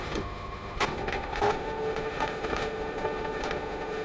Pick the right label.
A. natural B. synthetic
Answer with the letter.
B